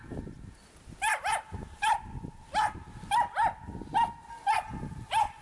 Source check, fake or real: real